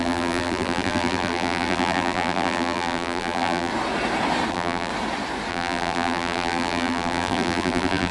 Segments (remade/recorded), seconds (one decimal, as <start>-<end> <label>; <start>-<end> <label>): 0.0-3.7 remade; 3.7-4.5 recorded; 4.5-4.9 remade; 4.9-5.5 recorded; 5.5-8.1 remade